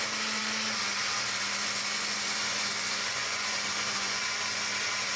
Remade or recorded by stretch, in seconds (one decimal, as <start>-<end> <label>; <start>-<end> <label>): 0.0-1.6 recorded; 1.6-4.7 remade; 4.7-5.2 recorded